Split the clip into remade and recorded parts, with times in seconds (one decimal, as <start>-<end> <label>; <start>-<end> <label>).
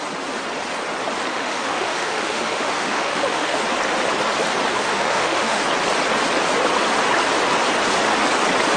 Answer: 0.0-1.3 recorded; 1.3-3.6 remade; 3.6-4.7 recorded; 4.7-5.6 remade; 5.6-8.8 recorded